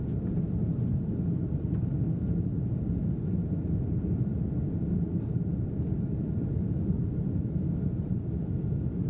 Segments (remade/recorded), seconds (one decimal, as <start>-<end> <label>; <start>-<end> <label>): 0.0-3.4 recorded; 3.4-4.4 remade; 4.4-9.1 recorded